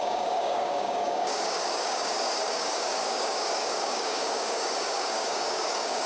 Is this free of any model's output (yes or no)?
no